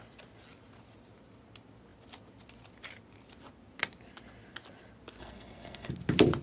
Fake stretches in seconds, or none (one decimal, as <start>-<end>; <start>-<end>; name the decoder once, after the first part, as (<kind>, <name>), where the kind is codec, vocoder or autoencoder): 5.2-5.9 (codec, SNAC)